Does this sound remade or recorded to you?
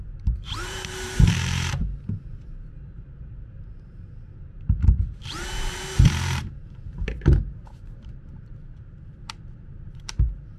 remade